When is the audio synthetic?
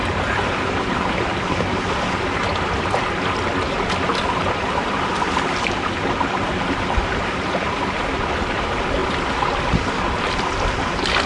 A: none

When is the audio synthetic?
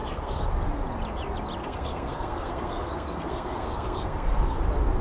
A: 0.0-0.5 (codec, SNAC); 1.6-4.6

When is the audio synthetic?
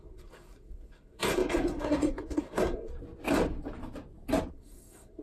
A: 0.0-2.9 (codec, SNAC); 4.5-5.2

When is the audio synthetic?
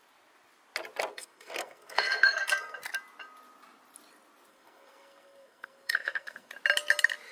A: 1.1-2.8 (codec, SNAC); 4.5-6.5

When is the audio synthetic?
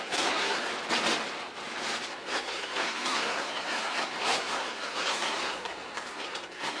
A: 0.0-0.7 (codec, SNAC); 2.1-6.8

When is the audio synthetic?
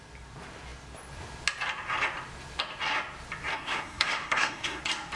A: 3.5-4.8 (codec, SNAC)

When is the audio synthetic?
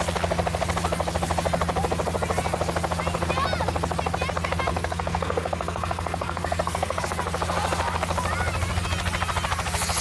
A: 4.7-7.0 (codec, SNAC)